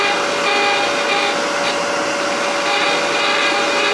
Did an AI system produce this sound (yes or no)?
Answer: no